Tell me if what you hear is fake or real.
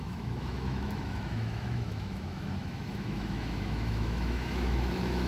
fake